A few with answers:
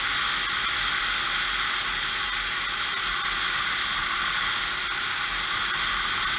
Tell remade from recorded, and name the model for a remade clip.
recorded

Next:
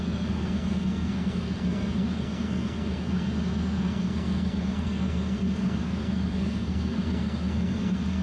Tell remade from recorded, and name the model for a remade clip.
remade, codec, SNAC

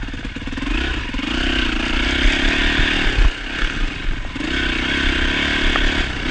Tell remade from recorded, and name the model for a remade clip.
recorded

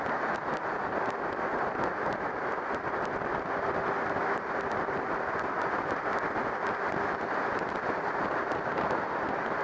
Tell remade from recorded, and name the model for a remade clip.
recorded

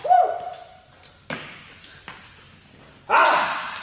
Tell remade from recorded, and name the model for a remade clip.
recorded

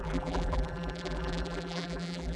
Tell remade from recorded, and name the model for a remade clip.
remade, vocoder, BigVGAN v2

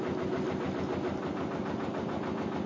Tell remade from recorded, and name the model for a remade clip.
recorded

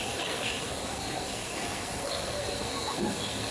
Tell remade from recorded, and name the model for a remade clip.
remade, codec, SNAC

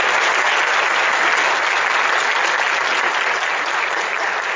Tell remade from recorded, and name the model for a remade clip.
recorded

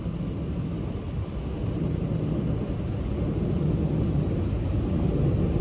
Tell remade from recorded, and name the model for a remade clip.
recorded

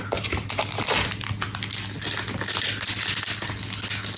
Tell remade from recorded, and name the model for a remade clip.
recorded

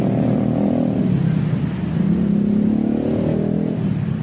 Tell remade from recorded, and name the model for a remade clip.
recorded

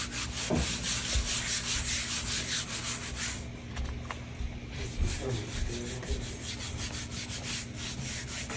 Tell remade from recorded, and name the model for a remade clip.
recorded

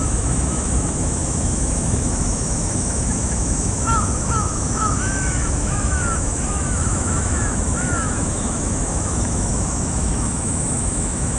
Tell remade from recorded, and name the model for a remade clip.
remade, autoencoder, DAC-VAE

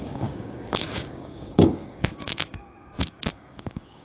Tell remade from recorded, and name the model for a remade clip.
remade, codec, DAC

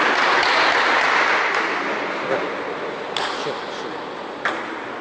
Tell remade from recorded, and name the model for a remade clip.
recorded